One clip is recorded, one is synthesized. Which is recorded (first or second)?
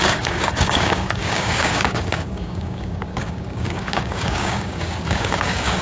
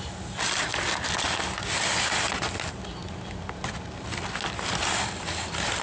second